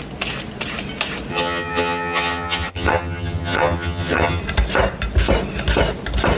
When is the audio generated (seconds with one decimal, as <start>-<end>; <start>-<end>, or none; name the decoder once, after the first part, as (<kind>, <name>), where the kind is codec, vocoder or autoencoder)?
1.3-4.4 (vocoder, HiFi-GAN)